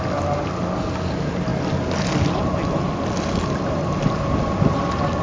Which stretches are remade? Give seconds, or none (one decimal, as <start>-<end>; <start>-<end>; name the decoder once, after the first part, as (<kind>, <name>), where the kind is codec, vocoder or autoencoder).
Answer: none